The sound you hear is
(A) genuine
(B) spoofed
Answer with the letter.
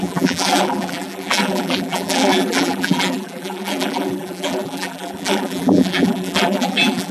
B